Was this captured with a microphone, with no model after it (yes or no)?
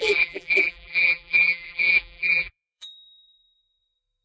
no